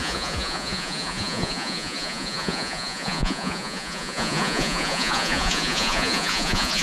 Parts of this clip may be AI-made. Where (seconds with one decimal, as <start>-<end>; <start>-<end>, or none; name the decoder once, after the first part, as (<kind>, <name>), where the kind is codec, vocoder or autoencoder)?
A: 0.0-6.8 (vocoder, Vocos)